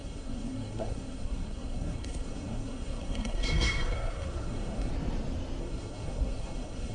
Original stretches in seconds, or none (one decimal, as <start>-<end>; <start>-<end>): 4.9-5.6